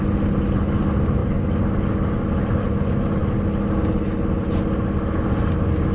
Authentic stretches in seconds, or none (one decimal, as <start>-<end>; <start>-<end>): 0.0-5.9